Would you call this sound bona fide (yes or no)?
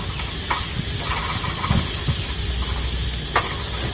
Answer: yes